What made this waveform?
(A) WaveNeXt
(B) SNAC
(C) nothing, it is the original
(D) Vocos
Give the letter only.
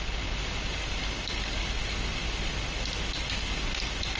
C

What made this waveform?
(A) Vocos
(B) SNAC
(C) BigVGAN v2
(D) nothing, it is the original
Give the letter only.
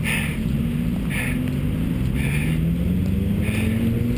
D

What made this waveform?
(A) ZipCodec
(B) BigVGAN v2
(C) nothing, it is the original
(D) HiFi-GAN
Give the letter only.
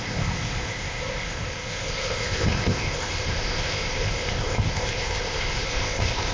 A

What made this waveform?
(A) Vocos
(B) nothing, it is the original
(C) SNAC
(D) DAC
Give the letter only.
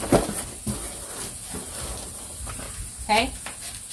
B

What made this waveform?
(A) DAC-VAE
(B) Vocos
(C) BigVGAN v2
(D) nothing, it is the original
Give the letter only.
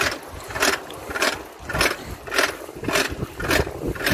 D